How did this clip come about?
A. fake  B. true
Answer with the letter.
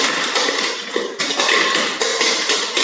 B